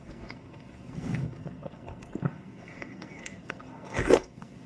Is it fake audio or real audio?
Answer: fake